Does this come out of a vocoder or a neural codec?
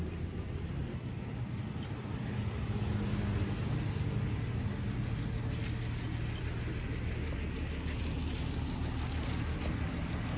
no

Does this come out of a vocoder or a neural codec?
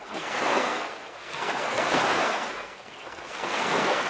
yes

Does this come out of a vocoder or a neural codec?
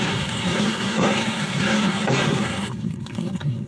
yes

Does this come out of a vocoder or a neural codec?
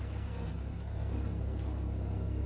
yes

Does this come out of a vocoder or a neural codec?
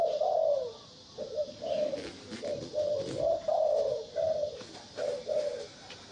no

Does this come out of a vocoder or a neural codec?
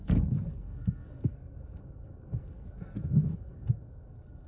yes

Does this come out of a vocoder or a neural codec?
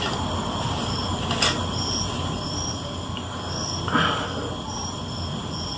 no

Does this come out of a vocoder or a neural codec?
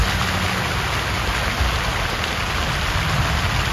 no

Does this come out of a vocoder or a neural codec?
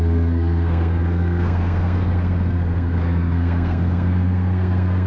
yes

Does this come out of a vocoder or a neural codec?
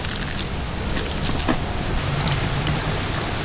no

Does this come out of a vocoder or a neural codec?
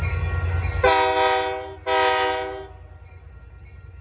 no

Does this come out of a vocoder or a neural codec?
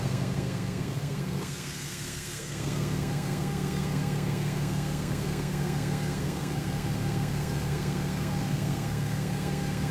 yes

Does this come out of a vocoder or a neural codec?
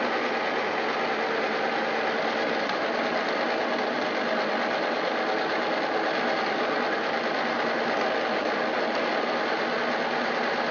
no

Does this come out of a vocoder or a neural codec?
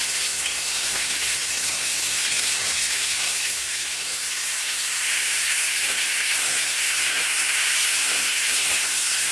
yes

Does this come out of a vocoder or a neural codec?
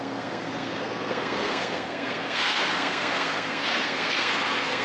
yes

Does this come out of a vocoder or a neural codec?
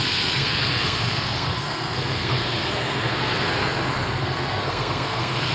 yes